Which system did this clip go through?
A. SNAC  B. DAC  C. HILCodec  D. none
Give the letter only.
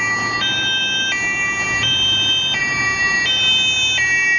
D